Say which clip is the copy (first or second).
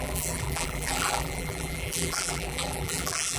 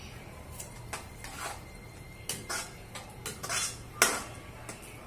first